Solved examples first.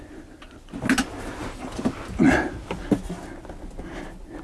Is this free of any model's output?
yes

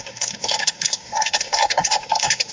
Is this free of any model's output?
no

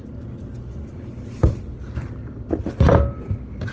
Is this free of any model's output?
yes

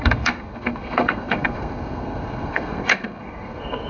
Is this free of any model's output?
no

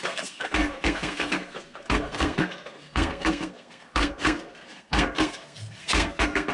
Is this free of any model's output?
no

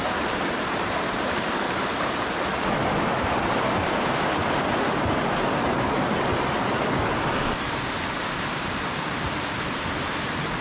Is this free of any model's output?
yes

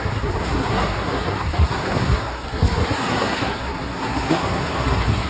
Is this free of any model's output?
no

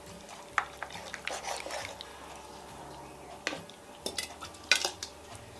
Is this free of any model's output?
yes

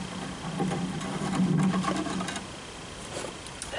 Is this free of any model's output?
yes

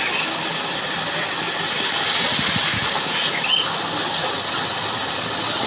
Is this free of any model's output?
yes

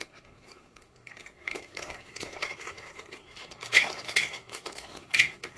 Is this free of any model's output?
no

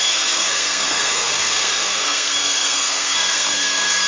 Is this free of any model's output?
no